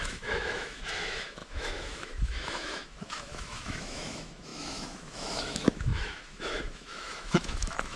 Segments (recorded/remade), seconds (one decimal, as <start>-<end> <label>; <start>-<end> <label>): 0.0-8.0 remade